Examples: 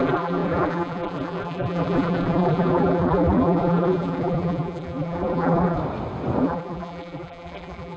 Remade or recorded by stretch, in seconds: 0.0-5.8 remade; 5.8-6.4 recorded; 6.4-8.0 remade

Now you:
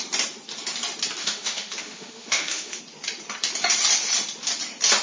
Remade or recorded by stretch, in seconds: 0.0-1.2 recorded; 1.2-2.8 remade; 2.8-5.0 recorded